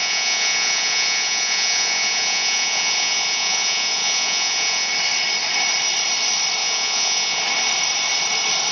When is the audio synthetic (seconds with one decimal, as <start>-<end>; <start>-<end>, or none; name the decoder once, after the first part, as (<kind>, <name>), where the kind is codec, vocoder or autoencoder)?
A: 0.0-4.9 (vocoder, Vocos); 6.6-7.4